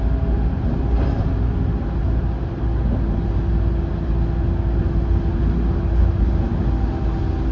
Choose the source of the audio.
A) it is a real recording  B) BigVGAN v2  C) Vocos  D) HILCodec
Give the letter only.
A